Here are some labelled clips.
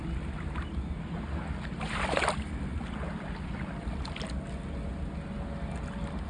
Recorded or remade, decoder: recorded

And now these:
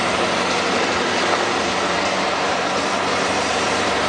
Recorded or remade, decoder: remade, vocoder, BigVGAN v2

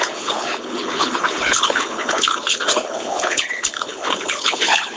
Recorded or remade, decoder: remade, codec, HILCodec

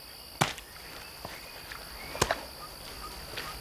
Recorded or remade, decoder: recorded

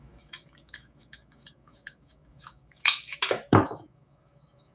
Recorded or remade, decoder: remade, autoencoder, DAC-VAE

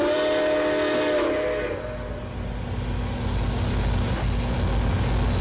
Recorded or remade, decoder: recorded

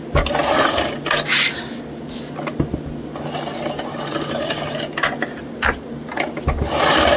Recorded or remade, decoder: recorded